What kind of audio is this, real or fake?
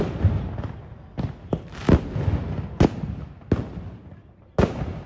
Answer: real